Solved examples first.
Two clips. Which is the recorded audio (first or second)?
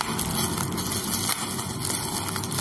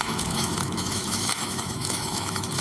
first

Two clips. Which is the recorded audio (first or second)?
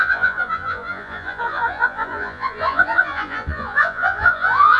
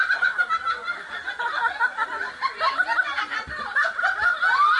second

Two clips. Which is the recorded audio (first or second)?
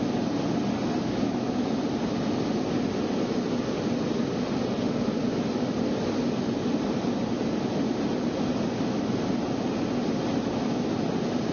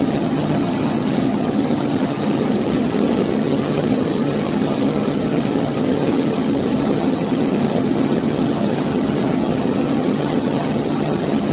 first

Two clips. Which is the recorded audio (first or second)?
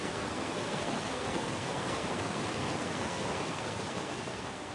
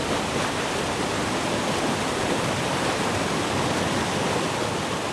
second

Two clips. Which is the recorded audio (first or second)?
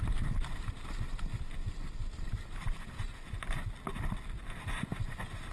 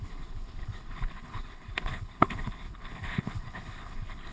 first